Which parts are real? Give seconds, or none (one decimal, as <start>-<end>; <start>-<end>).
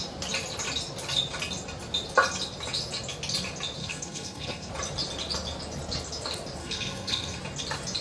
0.0-3.8; 4.7-6.6; 7.4-8.0